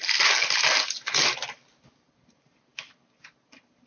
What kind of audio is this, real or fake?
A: real